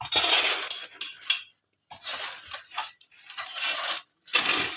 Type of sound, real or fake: real